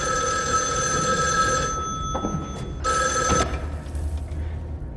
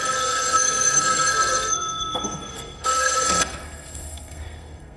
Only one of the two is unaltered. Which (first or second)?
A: first